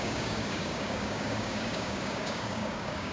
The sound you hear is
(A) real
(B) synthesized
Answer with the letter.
B